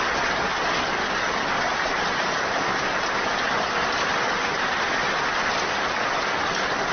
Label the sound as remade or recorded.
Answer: recorded